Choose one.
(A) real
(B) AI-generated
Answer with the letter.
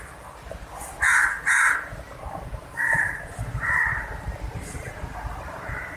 B